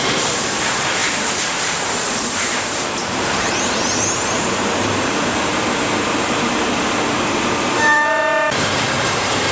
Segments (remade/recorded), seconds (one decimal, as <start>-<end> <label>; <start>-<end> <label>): 0.0-9.5 remade